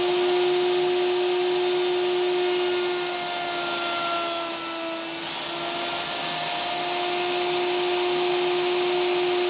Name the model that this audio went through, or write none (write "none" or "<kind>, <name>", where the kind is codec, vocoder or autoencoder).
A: none